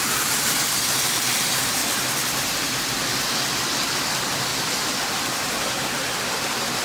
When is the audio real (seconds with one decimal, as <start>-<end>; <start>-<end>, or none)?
1.8-4.1; 4.5-5.3